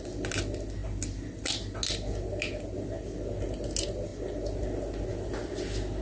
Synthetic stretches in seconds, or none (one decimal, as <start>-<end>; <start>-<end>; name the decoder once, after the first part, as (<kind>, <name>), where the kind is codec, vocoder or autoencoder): none